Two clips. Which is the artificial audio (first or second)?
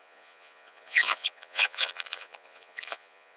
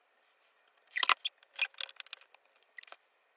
first